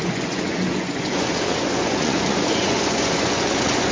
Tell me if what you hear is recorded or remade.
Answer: remade